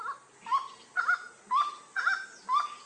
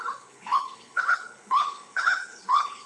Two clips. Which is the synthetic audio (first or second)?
second